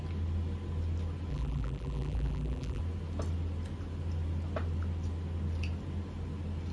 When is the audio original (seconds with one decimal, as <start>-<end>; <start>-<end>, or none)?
0.0-1.3; 2.8-6.7